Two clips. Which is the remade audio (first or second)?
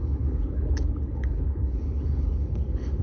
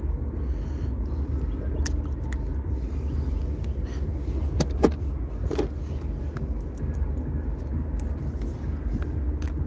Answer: first